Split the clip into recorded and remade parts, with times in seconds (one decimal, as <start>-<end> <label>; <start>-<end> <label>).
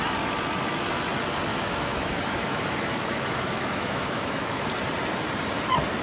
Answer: 0.0-1.5 recorded; 1.5-4.7 remade; 4.7-6.0 recorded